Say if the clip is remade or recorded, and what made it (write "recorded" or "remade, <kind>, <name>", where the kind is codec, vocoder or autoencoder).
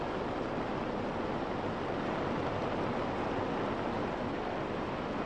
recorded